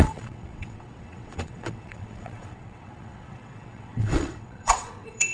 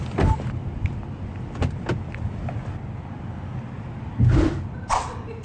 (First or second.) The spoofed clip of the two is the first